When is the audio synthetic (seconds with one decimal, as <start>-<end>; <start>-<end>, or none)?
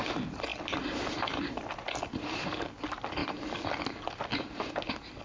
0.0-3.2